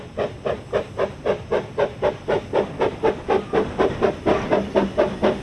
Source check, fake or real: real